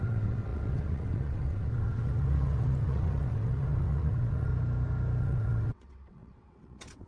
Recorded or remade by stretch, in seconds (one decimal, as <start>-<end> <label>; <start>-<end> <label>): 0.0-4.5 remade; 4.5-5.2 recorded; 5.2-7.1 remade